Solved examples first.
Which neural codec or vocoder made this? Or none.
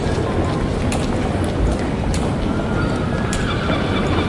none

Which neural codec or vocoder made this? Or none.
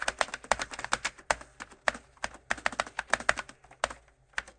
none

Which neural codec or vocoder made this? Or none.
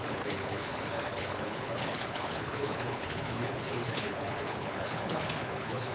codec, HILCodec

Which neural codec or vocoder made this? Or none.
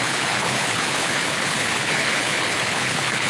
codec, HILCodec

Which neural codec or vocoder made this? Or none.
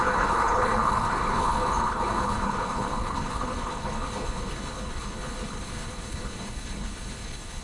codec, HILCodec